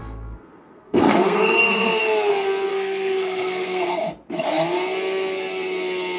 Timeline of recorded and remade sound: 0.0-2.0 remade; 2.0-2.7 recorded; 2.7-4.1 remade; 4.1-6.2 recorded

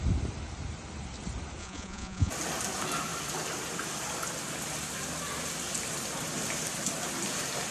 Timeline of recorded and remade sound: 0.0-1.6 recorded; 1.6-2.3 remade; 2.3-7.7 recorded

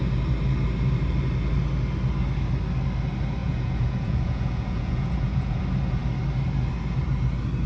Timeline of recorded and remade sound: 0.0-3.4 recorded; 3.4-5.6 remade; 5.6-7.7 recorded

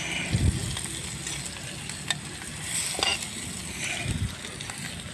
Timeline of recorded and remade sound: 0.0-5.1 recorded

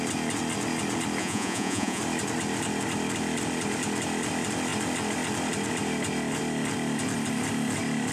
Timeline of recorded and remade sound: 0.0-1.2 recorded; 1.2-2.0 remade; 2.0-8.1 recorded